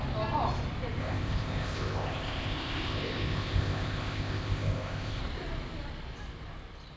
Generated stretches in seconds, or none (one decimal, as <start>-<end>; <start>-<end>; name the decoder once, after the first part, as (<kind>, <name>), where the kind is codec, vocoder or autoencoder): 1.0-5.2 (codec, ZipCodec)